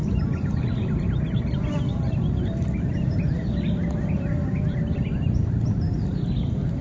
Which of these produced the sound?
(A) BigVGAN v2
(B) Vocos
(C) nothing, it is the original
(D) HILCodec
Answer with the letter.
C